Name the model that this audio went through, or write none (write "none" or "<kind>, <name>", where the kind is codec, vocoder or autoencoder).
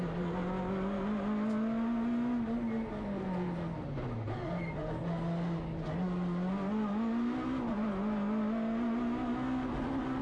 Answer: none